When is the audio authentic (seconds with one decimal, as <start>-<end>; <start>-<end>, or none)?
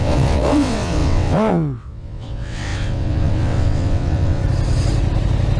4.4-5.6